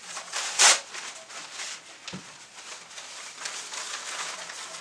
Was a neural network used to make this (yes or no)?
no